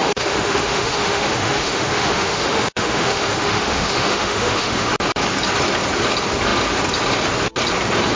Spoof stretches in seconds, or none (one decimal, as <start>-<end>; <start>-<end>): 0.0-4.9